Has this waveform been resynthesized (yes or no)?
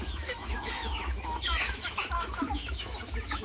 yes